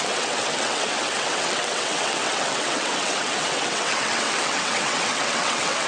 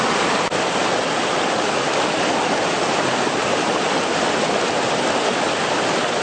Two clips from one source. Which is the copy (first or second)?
first